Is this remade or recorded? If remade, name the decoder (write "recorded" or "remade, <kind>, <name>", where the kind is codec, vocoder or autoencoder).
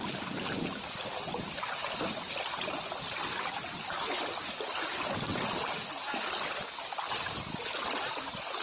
remade, vocoder, BigVGAN v2